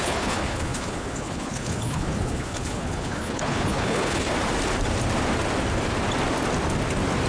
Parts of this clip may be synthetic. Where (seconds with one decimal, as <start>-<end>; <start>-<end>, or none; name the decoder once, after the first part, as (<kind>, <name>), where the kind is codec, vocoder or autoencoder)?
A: 0.0-4.3 (codec, HILCodec)